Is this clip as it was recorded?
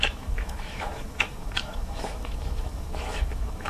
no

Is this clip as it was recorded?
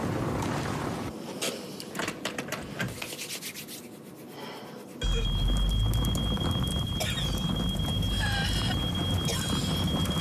yes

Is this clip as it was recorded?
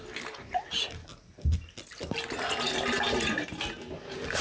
yes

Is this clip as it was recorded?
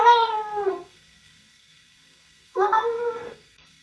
no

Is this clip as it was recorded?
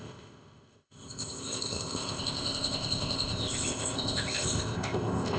no